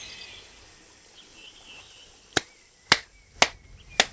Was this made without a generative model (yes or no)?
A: yes